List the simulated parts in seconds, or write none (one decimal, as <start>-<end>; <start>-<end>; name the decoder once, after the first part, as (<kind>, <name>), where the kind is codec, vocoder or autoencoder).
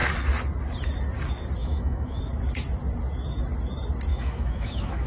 1.6-2.2 (autoencoder, DAC-VAE); 4.1-5.1